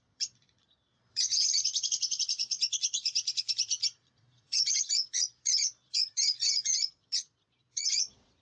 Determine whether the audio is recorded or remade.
remade